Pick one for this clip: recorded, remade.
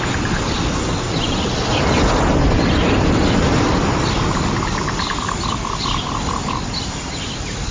recorded